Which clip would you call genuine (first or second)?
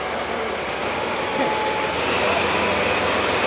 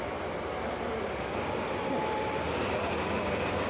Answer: first